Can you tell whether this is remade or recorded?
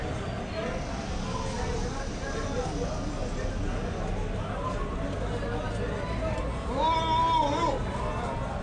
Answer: recorded